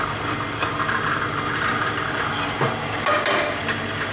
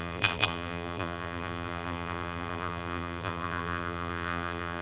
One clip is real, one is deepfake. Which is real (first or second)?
first